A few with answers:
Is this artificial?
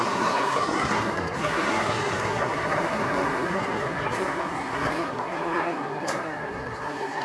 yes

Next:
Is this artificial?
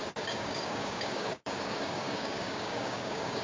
yes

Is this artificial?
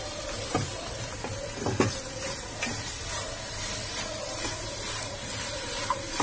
yes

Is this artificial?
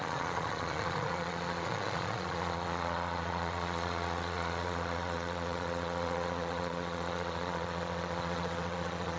yes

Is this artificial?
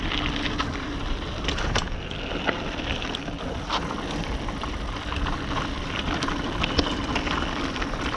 no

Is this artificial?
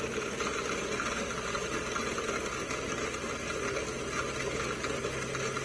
no